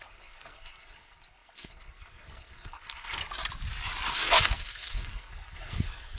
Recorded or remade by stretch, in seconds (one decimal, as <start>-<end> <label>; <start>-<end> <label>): 0.0-3.2 remade; 3.2-4.1 recorded; 4.1-6.2 remade